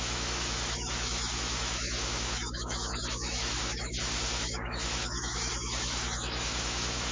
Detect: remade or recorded remade